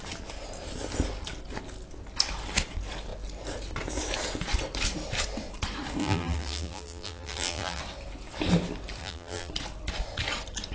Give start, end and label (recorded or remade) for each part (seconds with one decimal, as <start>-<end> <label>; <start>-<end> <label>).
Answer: 0.0-6.0 recorded; 6.0-7.8 remade; 7.8-9.0 recorded; 9.0-9.5 remade; 9.5-10.7 recorded